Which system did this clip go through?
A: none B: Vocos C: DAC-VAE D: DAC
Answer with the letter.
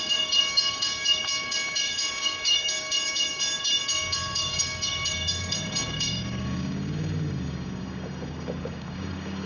D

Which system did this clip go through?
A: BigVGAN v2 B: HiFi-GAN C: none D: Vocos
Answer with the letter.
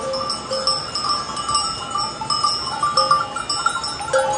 C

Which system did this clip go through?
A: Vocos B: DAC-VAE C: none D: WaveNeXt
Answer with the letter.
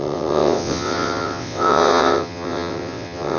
D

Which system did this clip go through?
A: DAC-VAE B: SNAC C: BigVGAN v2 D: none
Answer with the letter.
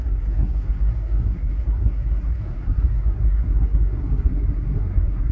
B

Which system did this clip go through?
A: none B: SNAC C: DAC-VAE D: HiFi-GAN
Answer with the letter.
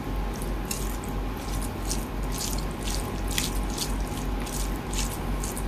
A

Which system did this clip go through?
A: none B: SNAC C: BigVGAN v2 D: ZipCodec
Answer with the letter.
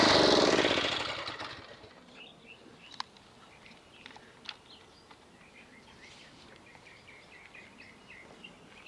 A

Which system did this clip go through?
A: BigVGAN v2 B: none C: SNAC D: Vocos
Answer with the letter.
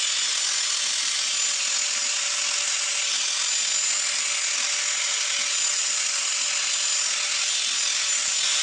B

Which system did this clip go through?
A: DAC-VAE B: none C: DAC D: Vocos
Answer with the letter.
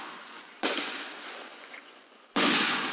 D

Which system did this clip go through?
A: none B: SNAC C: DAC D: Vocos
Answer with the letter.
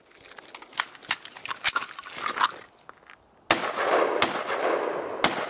A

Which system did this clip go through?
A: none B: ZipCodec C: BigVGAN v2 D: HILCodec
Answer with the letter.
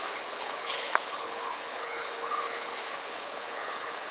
D